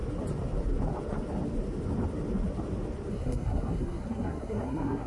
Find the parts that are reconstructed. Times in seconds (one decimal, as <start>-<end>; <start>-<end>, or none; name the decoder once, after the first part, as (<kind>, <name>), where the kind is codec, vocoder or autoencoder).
3.1-5.1 (codec, SNAC)